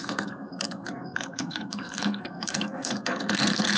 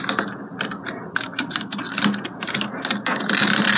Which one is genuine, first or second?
second